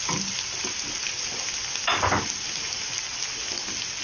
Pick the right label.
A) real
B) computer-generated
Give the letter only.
A